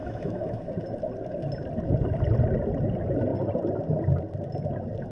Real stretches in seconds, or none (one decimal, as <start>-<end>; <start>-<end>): 0.7-5.1